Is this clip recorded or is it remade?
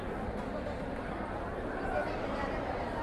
remade